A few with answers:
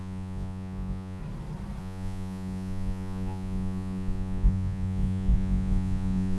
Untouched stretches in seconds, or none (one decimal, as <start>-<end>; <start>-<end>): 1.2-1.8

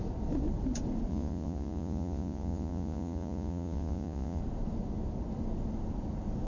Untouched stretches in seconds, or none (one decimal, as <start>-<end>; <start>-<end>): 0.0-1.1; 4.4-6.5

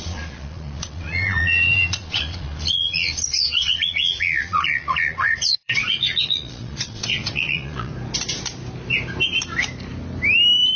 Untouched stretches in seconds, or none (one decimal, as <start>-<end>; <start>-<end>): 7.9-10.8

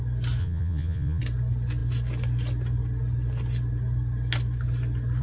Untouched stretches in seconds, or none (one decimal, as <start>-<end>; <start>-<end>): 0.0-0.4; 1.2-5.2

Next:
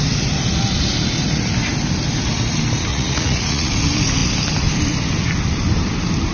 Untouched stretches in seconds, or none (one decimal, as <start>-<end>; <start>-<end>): 0.0-2.9; 3.7-6.3